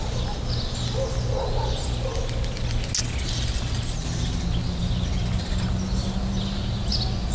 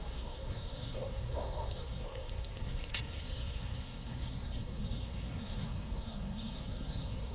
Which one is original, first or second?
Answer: first